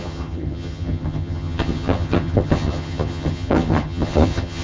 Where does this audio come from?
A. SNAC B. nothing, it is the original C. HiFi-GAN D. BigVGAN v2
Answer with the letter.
C